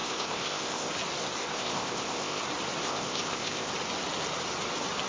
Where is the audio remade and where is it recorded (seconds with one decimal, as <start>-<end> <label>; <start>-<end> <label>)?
0.0-0.9 remade; 0.9-1.4 recorded; 1.4-2.4 remade; 2.4-2.8 recorded; 2.8-3.7 remade; 3.7-5.1 recorded